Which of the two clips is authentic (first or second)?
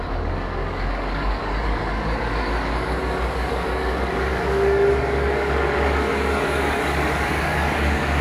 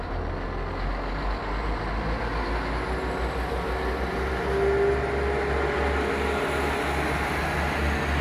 second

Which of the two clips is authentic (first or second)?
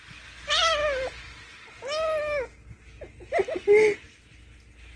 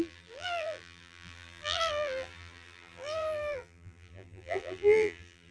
first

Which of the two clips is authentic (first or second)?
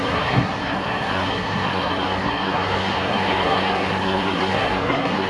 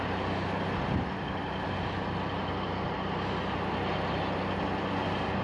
second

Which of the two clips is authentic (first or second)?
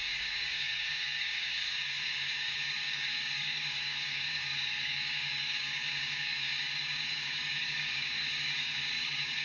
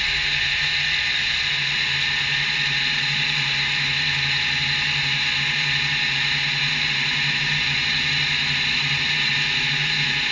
second